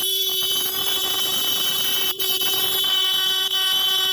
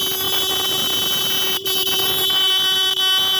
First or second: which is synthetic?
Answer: first